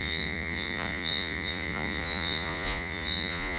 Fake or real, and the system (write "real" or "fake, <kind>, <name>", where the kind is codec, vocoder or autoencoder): fake, vocoder, Vocos